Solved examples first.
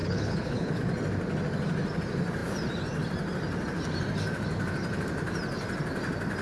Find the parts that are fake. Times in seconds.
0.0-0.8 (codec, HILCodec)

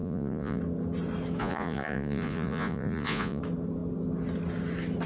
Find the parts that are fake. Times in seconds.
0.0-0.6 (vocoder, Vocos); 1.4-3.4

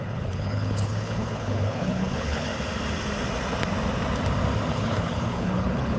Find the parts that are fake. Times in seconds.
0.0-2.5 (codec, HILCodec); 4.7-6.0